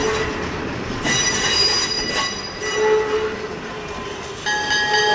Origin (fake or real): real